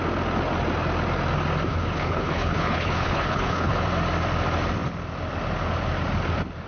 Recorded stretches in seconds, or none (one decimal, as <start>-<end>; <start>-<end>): 0.0-1.7; 3.7-6.7